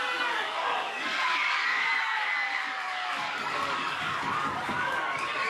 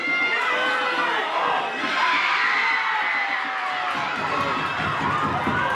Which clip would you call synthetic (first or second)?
first